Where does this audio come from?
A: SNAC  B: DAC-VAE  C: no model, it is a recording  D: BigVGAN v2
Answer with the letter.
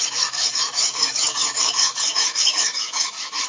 B